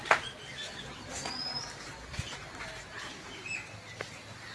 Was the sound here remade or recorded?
recorded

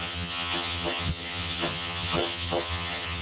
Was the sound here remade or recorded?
remade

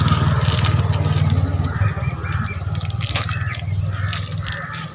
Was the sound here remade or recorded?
recorded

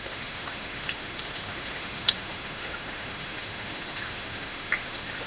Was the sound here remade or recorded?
remade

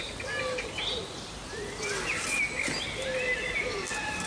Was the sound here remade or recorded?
recorded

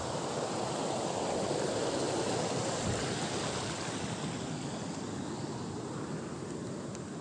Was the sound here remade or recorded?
recorded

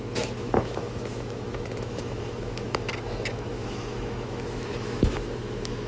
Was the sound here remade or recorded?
remade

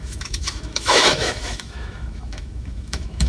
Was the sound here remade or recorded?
remade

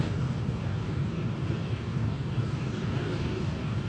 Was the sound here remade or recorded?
remade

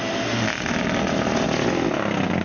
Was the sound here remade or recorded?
recorded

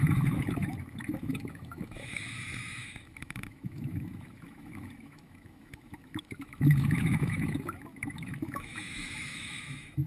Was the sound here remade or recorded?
remade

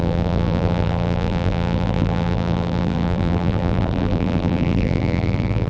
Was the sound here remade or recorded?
remade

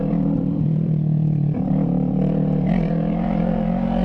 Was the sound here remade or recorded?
remade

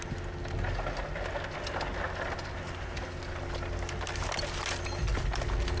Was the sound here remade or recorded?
recorded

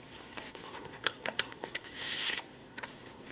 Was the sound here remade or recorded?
remade